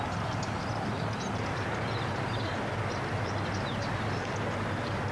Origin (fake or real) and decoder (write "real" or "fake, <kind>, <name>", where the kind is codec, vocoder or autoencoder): real